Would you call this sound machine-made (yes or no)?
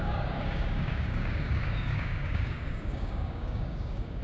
yes